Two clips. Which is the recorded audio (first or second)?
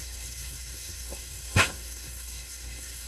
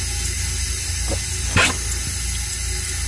second